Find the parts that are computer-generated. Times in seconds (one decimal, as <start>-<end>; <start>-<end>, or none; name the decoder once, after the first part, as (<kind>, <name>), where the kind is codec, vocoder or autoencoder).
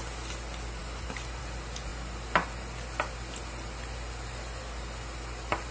none